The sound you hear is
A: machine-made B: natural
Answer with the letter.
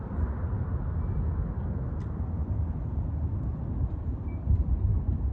B